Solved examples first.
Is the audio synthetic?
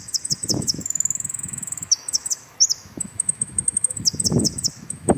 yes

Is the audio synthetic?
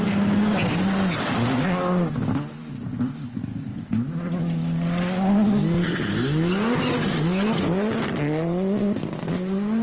no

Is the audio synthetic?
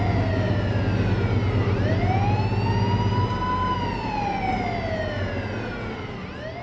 no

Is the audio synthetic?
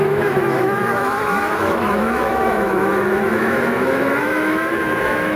yes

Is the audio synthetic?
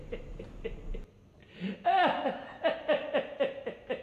no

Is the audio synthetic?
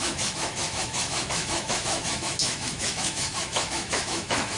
yes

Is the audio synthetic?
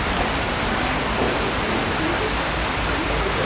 no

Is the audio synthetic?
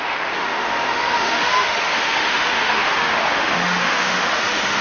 yes